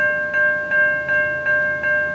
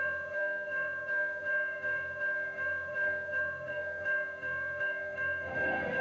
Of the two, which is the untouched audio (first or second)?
first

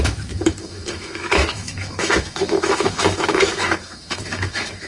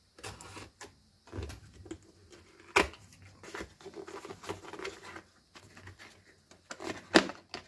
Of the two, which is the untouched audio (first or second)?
second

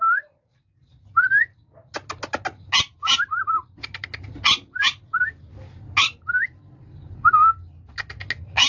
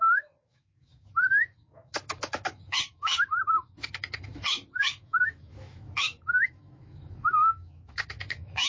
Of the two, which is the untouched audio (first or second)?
first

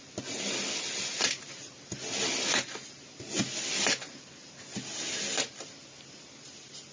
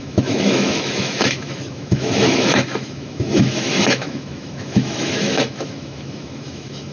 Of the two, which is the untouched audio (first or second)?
first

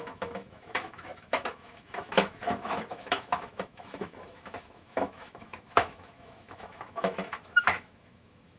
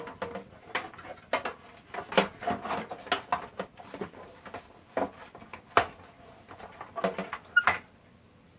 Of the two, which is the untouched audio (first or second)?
second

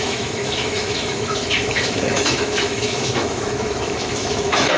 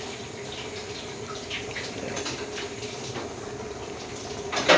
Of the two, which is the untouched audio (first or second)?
second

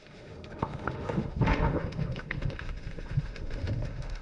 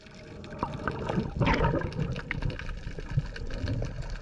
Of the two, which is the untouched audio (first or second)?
second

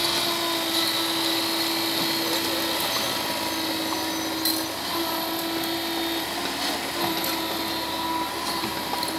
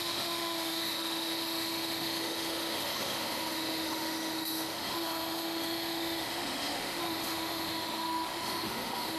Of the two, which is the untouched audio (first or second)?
first